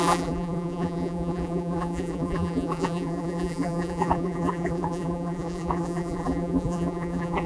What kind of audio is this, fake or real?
fake